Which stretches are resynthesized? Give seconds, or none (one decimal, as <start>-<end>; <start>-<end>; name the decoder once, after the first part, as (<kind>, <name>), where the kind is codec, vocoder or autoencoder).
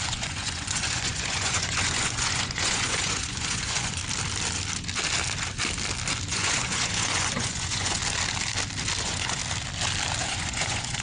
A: 0.0-4.0 (vocoder, Vocos); 6.3-8.0; 9.0-9.4; 10.2-11.0